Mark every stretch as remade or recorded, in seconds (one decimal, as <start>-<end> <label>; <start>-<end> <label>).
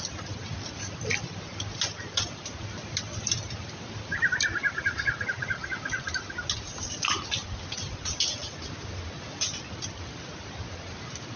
0.0-11.4 recorded